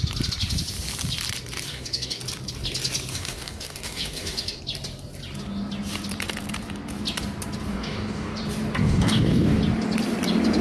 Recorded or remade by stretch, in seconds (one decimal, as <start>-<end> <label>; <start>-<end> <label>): 0.0-1.7 recorded; 1.7-2.2 remade; 2.2-3.1 recorded; 3.1-4.6 remade; 4.6-7.7 recorded; 7.7-8.4 remade; 8.4-8.8 recorded; 8.8-9.6 remade; 9.6-10.6 recorded